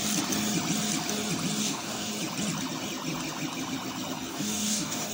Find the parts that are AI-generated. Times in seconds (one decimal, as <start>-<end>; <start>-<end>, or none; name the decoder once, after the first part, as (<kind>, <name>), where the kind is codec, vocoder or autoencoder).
1.6-2.1 (codec, DAC); 4.3-5.1